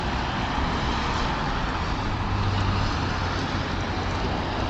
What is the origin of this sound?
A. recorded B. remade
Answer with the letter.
A